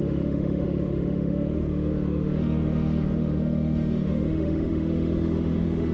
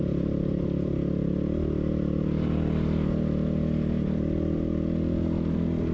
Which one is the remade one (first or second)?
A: first